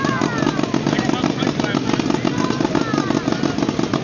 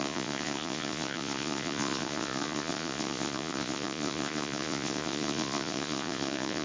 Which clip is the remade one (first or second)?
second